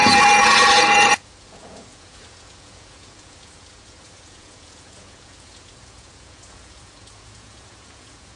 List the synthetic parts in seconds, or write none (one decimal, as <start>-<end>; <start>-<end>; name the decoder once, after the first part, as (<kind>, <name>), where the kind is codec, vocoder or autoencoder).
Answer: 0.0-8.4 (vocoder, Vocos)